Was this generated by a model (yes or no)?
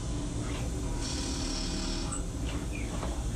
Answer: no